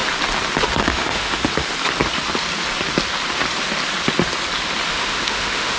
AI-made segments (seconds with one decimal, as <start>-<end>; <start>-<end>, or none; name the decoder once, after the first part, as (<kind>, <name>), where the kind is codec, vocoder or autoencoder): 0.8-1.4 (autoencoder, DAC-VAE); 4.9-5.8